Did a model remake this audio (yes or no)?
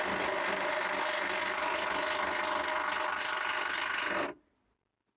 no